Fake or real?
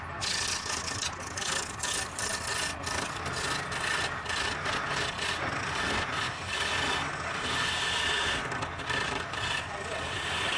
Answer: real